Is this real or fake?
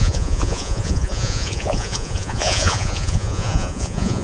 fake